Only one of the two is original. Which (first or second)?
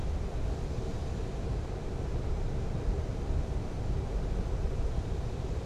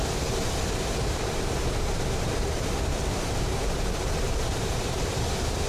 first